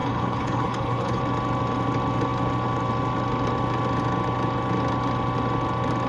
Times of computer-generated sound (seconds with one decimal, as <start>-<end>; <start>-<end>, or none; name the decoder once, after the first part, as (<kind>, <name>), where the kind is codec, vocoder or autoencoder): 0.0-1.2 (codec, HILCodec)